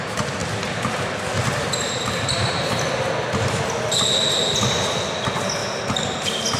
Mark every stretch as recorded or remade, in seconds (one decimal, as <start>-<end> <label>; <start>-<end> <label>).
0.0-5.6 recorded; 5.6-6.6 remade